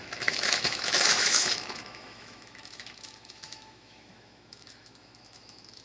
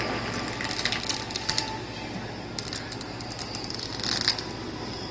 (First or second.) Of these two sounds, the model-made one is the first